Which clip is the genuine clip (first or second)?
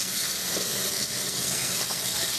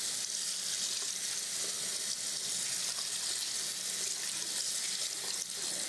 second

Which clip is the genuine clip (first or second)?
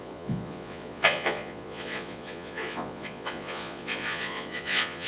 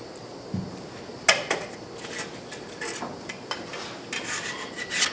second